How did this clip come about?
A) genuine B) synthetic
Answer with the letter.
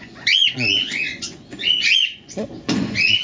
B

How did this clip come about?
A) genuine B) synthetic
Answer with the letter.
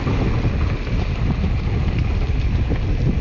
A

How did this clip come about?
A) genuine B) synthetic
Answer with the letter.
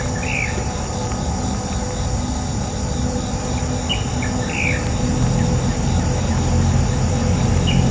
A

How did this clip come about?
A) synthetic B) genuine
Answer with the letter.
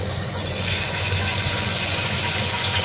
A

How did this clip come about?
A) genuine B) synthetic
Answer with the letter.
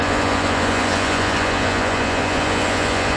B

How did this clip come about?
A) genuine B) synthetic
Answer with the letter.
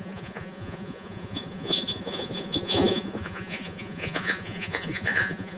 B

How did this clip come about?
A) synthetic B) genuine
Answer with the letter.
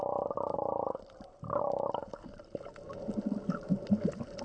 B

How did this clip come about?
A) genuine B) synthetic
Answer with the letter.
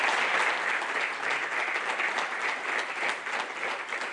A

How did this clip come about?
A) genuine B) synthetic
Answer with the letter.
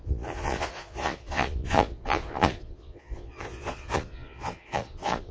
B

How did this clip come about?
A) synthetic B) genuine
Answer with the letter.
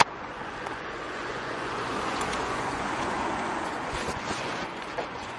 A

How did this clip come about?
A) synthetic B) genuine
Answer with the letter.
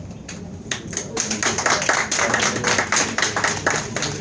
B